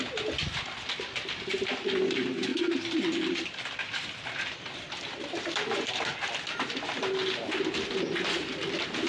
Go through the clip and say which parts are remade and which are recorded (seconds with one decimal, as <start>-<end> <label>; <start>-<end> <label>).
0.0-2.5 recorded; 2.5-6.8 remade; 6.8-9.1 recorded